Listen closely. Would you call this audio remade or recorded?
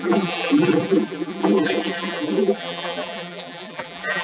remade